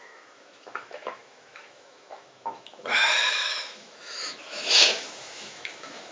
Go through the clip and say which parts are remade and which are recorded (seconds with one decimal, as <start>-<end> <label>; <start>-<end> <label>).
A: 0.0-6.1 remade